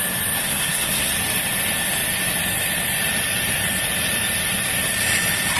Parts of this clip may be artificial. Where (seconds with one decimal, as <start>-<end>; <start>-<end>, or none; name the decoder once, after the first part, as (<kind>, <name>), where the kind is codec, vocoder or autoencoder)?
0.4-1.1 (codec, SNAC)